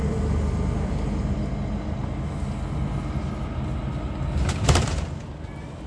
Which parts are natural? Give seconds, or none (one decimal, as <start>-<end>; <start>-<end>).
0.0-5.9